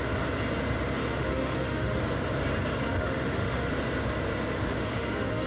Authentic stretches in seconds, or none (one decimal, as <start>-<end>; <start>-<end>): 0.0-1.0; 2.0-2.8; 3.7-4.8